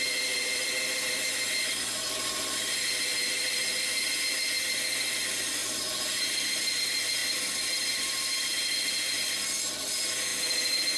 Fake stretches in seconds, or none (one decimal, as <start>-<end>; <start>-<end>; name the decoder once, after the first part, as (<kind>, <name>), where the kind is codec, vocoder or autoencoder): 0.0-11.0 (vocoder, BigVGAN v2)